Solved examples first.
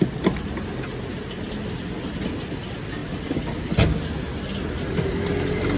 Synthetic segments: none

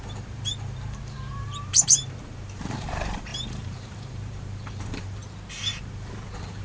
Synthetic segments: 0.0-5.2; 5.7-6.6

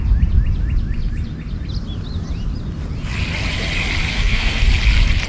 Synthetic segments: 4.0-4.7

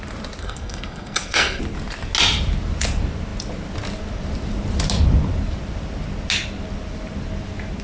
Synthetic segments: 0.4-1.6

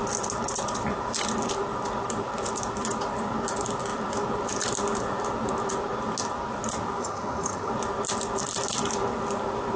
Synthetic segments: 7.0-7.7

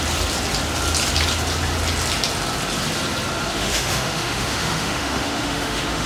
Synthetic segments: 3.5-6.1

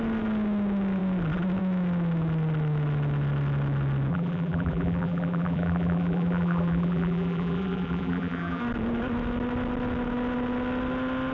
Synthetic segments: 4.1-8.6

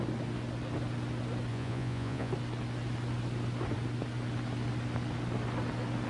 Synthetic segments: 1.5-2.3